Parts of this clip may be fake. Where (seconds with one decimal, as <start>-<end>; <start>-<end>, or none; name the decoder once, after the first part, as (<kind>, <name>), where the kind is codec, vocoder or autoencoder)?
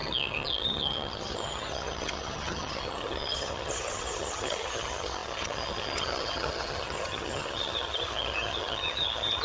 0.0-9.4 (vocoder, HiFi-GAN)